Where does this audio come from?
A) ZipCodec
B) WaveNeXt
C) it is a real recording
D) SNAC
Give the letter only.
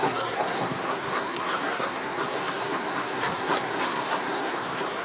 D